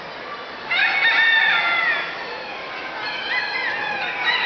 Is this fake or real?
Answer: real